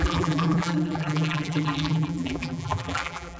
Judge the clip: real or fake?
fake